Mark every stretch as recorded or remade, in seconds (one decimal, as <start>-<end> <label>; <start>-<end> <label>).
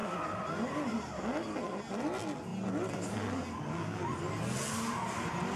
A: 0.0-5.6 recorded